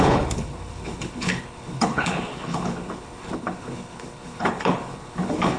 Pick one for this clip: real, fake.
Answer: fake